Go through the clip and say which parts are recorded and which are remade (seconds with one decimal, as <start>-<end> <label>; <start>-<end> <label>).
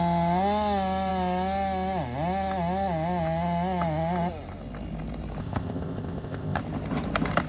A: 0.0-5.4 recorded; 5.4-6.6 remade; 6.6-7.5 recorded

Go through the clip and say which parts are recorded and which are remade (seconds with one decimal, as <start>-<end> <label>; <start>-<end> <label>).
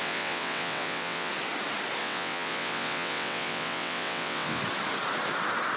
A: 0.0-1.3 remade; 1.3-2.0 recorded; 2.0-4.6 remade; 4.6-5.8 recorded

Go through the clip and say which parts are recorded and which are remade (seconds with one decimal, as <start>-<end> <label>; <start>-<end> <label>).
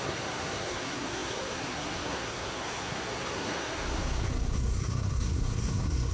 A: 0.0-6.1 remade